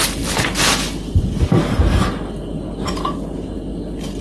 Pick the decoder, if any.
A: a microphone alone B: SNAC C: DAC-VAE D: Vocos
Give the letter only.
A